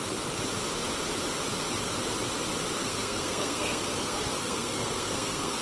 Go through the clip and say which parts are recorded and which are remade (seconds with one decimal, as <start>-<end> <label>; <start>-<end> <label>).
0.0-2.8 recorded; 2.8-5.6 remade